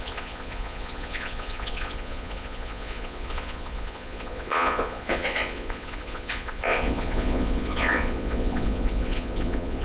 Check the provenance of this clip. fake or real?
fake